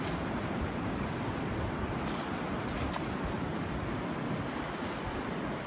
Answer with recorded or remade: recorded